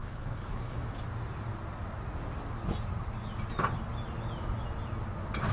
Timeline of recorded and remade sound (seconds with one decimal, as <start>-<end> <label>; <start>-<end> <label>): 0.0-0.8 remade; 0.8-5.5 recorded